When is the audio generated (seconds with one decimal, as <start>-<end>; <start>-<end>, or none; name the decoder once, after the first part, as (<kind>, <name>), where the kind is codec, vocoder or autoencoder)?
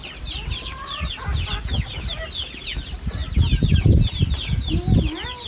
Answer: none